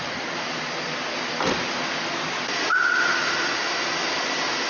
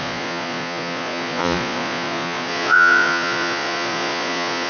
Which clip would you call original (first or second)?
first